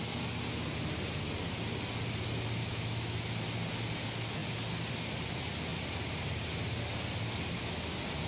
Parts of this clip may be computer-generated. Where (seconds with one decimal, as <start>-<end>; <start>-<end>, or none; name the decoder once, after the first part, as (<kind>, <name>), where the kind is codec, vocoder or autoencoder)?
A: 2.6-3.2 (autoencoder, DAC-VAE)